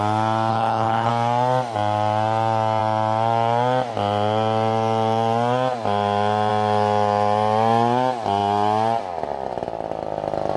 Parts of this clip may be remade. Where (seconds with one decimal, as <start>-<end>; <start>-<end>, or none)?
0.5-1.1